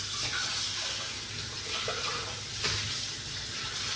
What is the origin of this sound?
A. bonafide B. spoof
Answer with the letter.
A